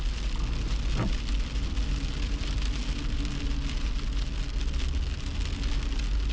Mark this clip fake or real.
real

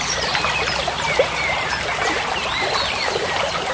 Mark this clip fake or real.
real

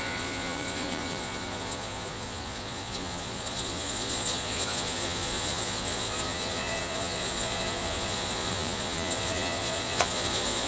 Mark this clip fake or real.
fake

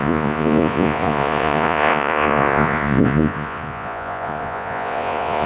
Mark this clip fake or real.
fake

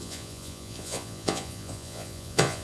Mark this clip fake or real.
fake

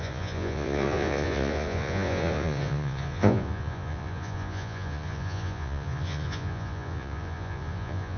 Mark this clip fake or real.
fake